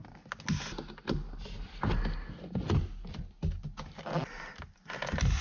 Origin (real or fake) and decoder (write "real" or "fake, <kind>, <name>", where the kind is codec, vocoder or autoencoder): real